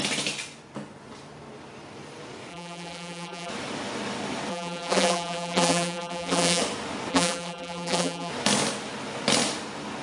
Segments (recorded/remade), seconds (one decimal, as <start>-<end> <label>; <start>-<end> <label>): 0.0-2.5 recorded; 2.5-3.5 remade; 3.5-4.5 recorded; 4.5-6.6 remade; 6.6-7.1 recorded; 7.1-8.3 remade; 8.3-10.0 recorded